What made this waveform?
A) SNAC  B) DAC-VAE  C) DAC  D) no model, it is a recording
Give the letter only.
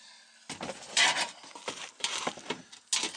D